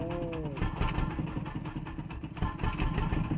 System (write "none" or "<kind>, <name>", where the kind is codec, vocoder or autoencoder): none